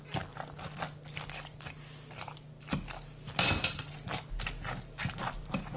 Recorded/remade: recorded